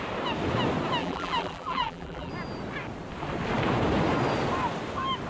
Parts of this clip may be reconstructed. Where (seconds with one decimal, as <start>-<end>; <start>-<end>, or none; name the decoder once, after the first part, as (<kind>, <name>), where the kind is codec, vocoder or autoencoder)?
1.0-2.3 (vocoder, BigVGAN v2)